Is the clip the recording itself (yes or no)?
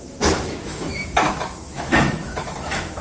no